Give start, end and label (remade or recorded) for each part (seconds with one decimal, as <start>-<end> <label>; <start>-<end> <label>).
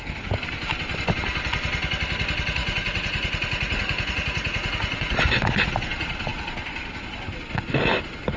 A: 0.0-2.6 recorded; 2.6-5.2 remade; 5.2-8.4 recorded